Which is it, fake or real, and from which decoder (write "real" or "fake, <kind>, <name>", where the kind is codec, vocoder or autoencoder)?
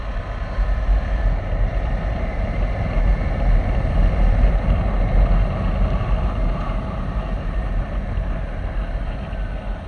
real